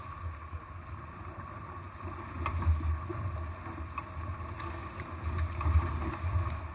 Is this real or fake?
real